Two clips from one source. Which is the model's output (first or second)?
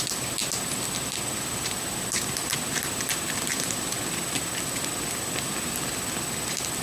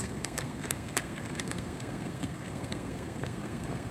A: second